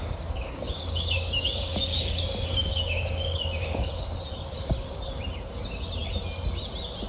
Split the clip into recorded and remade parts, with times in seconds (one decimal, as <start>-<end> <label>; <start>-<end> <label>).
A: 0.0-3.9 remade; 3.9-7.1 recorded